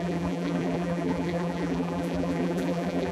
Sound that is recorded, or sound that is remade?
remade